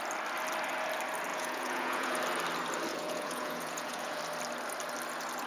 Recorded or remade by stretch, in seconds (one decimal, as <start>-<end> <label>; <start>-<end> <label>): 0.0-1.3 recorded; 1.3-2.2 remade; 2.2-2.9 recorded; 2.9-4.2 remade; 4.2-5.5 recorded